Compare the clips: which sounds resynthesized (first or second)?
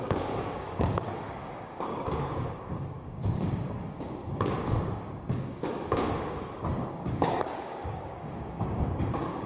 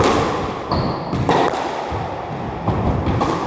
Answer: first